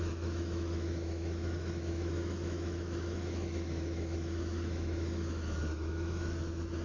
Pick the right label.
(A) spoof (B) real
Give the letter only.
A